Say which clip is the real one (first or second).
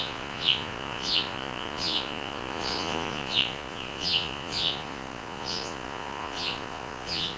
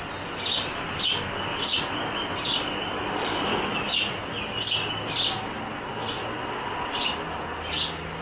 second